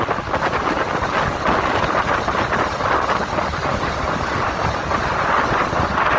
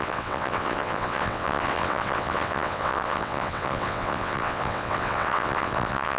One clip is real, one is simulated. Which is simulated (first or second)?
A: second